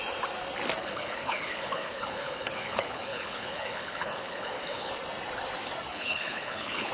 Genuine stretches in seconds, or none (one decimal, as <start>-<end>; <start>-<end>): 0.0-0.8; 4.9-5.9